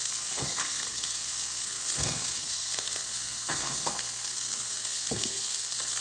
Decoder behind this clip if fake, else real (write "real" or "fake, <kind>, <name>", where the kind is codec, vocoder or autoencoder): fake, codec, SNAC